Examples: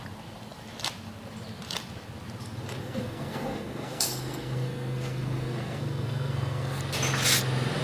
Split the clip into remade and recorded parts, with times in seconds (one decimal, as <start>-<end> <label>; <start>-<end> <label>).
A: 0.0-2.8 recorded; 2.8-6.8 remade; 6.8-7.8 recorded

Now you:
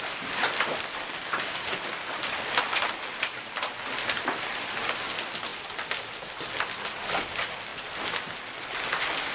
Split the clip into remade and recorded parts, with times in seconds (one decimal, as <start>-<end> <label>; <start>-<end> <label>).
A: 0.0-9.3 recorded

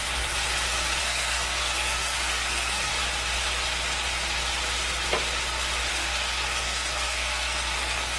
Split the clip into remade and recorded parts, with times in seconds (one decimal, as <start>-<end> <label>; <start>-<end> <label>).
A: 0.0-1.0 recorded; 1.0-2.9 remade; 2.9-5.9 recorded; 5.9-8.2 remade

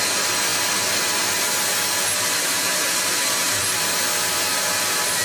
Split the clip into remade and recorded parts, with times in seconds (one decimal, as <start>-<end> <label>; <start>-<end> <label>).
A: 0.0-5.2 recorded